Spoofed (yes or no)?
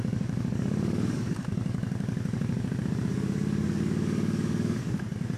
yes